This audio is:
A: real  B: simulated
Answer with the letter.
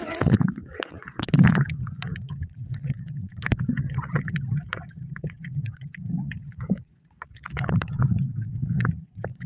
B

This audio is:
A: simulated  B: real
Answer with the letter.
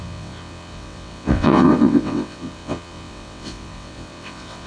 A